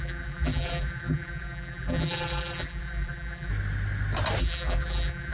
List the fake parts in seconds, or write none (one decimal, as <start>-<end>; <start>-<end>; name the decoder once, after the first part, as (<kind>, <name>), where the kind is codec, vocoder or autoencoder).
0.0-3.5 (vocoder, BigVGAN v2); 4.4-5.3